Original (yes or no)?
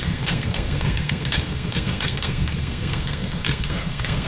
no